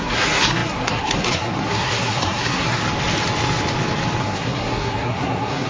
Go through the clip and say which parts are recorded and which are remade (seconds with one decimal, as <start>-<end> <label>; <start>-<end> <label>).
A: 0.0-2.8 remade; 2.8-4.2 recorded; 4.2-5.7 remade